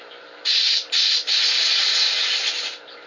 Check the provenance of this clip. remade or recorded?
recorded